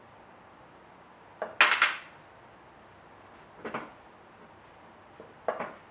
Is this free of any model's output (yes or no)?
yes